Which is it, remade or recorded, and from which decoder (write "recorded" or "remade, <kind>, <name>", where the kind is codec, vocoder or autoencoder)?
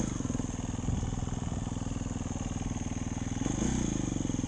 recorded